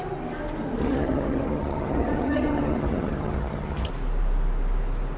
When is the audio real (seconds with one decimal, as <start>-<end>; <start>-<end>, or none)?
0.0-0.8; 3.9-5.2